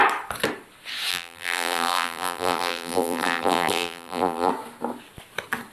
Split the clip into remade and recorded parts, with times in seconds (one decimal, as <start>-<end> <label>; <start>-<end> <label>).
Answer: 0.0-1.1 recorded; 1.1-4.5 remade; 4.5-5.7 recorded